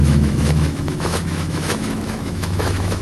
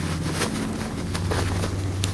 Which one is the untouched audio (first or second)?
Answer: second